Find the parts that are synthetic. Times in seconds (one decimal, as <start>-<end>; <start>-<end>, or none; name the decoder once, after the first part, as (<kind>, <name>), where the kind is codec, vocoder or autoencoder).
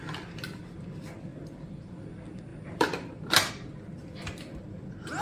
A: 1.3-2.1 (vocoder, BigVGAN v2); 2.5-3.5